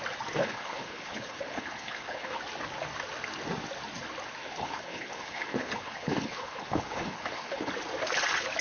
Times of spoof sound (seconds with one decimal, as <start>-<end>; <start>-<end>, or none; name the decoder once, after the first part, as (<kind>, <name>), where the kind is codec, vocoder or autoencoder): 0.4-2.4 (codec, HILCodec); 4.4-7.7